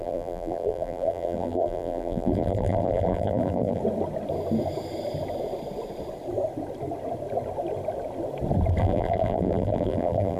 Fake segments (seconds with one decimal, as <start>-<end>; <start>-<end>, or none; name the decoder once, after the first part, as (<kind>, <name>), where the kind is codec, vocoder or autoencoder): 0.0-3.8 (vocoder, BigVGAN v2); 8.8-10.4